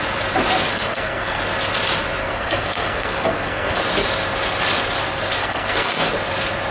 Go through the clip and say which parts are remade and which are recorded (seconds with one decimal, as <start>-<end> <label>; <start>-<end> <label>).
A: 0.0-0.7 recorded; 0.7-1.4 remade; 1.4-2.2 recorded; 2.2-3.8 remade; 3.8-5.4 recorded; 5.4-6.1 remade; 6.1-6.7 recorded